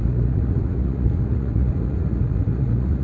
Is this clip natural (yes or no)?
no